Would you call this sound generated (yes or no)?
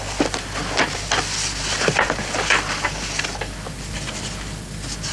no